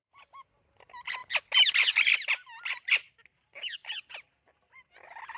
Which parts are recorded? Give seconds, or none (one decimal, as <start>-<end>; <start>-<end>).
0.0-3.8